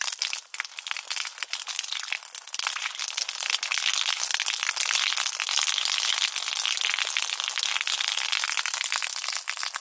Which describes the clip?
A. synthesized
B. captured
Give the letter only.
B